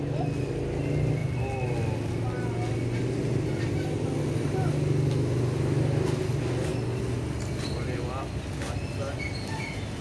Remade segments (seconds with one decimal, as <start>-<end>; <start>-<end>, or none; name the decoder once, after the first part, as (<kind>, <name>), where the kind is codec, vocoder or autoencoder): none